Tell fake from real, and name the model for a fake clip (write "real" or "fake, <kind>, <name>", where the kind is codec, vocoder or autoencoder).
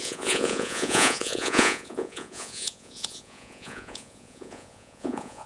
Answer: fake, vocoder, Vocos